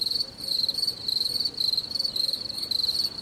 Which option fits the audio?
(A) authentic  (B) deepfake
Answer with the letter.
A